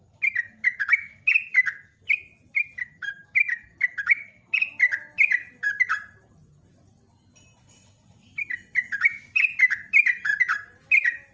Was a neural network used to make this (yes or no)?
no